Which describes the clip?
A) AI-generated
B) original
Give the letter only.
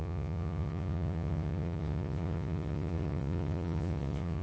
A